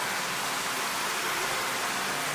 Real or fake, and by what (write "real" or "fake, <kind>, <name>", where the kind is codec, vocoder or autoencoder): real